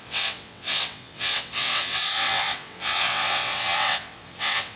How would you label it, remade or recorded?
remade